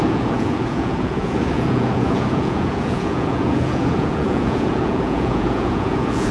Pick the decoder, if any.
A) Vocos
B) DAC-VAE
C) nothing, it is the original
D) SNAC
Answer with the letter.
A